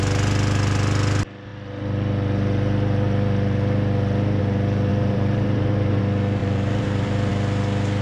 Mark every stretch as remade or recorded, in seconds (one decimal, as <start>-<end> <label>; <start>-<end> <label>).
0.0-4.9 recorded; 4.9-6.0 remade; 6.0-6.4 recorded; 6.4-7.3 remade; 7.3-8.0 recorded